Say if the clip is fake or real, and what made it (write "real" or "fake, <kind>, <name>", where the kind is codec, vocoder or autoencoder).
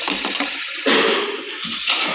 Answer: real